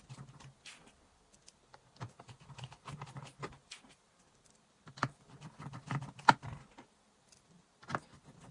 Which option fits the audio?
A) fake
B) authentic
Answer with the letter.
A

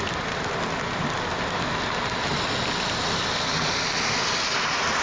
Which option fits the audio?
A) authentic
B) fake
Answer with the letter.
A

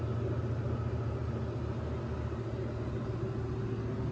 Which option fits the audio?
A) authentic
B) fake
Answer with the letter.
A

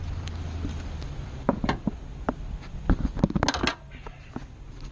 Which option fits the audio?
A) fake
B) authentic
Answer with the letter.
B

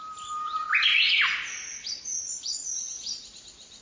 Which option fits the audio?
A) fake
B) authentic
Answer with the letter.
B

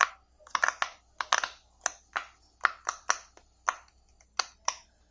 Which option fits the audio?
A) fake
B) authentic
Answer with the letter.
B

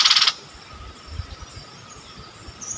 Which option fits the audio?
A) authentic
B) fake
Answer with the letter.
A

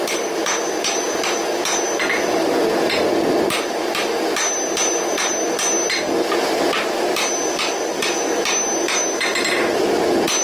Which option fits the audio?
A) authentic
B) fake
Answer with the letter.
A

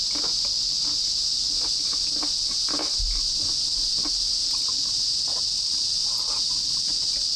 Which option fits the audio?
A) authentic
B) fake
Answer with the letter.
A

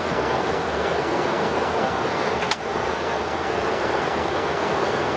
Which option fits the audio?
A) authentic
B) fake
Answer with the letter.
B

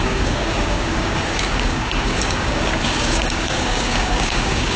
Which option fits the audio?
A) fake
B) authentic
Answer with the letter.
A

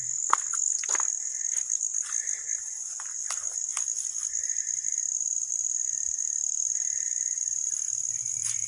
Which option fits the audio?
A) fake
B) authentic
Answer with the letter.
B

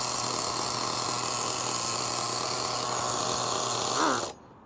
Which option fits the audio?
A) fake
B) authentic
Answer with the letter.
B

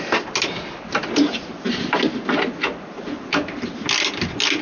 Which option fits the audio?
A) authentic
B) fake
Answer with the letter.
A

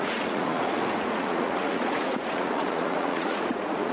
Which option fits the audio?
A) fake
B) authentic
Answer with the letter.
A